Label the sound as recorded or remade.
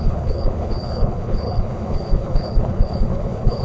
remade